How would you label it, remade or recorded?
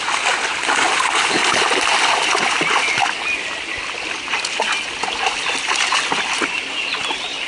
recorded